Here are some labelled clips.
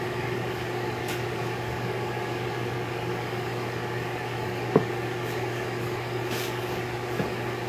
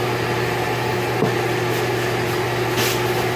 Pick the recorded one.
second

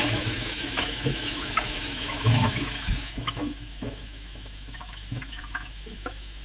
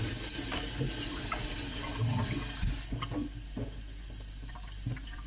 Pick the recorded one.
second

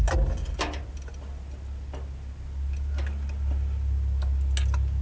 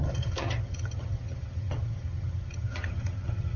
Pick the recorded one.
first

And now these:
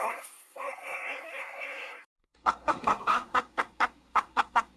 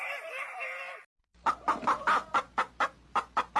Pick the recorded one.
second